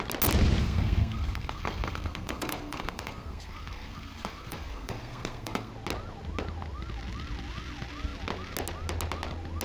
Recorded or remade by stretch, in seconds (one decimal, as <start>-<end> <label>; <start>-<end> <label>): 0.0-0.6 recorded; 0.6-5.7 remade; 5.7-9.6 recorded